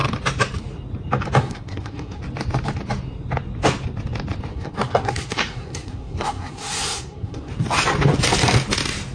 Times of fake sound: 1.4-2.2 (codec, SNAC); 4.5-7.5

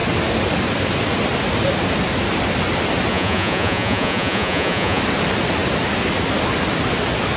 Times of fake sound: 3.1-5.0 (vocoder, Vocos)

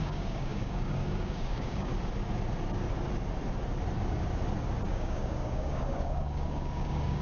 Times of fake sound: 0.0-1.9 (codec, DAC); 4.9-7.2

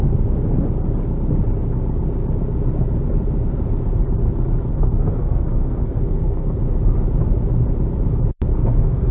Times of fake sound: 4.7-6.6 (codec, SNAC); 8.5-9.1

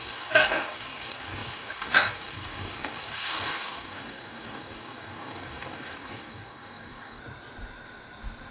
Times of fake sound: 0.0-7.2 (codec, DAC)